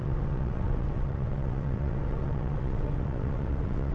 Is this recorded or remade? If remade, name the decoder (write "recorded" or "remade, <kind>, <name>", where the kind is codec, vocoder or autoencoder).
remade, vocoder, WaveNeXt